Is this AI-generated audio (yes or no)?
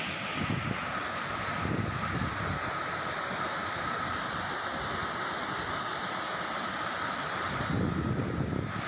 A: no